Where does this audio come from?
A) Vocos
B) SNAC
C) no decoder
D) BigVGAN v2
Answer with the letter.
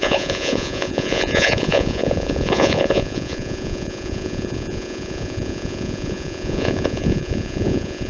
A